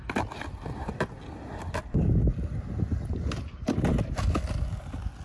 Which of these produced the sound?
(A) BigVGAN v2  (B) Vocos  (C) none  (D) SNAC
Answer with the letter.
C